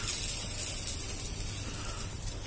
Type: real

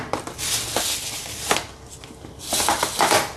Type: real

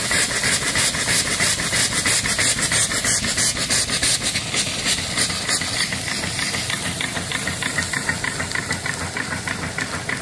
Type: real